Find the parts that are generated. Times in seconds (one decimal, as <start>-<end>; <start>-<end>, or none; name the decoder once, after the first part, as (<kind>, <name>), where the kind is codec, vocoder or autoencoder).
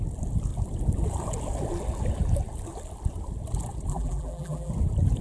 3.9-4.7 (vocoder, BigVGAN v2)